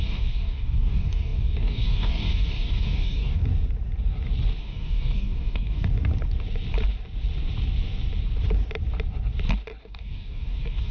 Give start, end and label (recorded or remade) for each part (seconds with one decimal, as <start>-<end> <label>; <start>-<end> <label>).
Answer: 0.0-3.4 remade; 3.4-4.6 recorded; 4.6-5.9 remade; 5.9-9.8 recorded; 9.8-10.9 remade

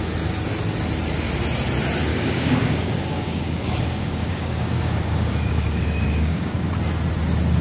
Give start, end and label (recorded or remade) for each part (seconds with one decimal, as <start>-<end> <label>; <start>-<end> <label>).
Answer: 0.0-2.1 recorded; 2.1-6.7 remade; 6.7-7.6 recorded

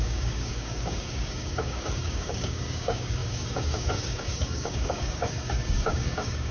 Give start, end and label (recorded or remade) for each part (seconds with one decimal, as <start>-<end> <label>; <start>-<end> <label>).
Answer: 0.0-6.5 remade

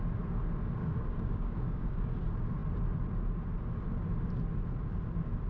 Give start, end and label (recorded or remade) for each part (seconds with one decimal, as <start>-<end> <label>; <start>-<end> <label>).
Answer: 0.0-0.8 recorded; 0.8-2.1 remade; 2.1-5.5 recorded

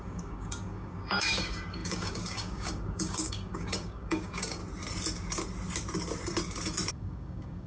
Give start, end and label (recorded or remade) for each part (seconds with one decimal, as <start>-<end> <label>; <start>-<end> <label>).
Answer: 0.0-4.6 remade; 4.6-6.9 recorded; 6.9-7.7 remade